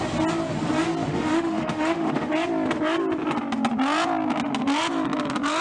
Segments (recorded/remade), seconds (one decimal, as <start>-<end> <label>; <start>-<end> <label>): 0.0-1.1 recorded; 1.1-2.3 remade; 2.3-5.6 recorded